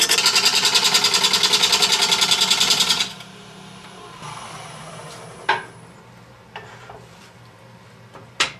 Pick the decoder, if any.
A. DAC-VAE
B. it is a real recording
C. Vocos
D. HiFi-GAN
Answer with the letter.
B